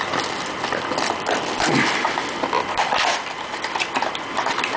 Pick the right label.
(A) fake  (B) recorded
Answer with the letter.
A